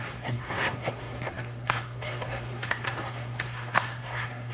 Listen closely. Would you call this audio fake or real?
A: fake